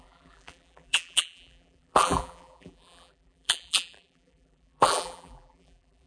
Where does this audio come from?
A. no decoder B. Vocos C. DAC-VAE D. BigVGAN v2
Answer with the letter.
D